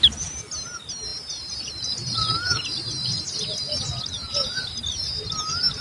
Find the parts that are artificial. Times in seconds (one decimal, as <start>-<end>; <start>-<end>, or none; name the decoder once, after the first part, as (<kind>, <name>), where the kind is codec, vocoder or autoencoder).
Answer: none